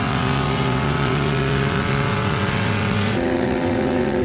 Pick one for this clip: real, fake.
fake